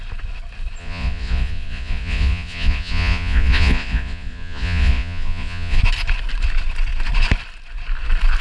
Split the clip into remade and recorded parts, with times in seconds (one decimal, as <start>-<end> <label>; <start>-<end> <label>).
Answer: 0.0-0.8 recorded; 0.8-5.8 remade; 5.8-8.4 recorded